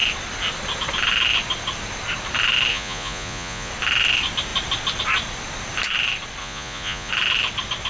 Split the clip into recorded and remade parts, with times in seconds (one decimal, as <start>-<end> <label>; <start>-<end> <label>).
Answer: 0.0-2.7 recorded; 2.7-3.7 remade; 3.7-6.4 recorded; 6.4-7.1 remade; 7.1-7.9 recorded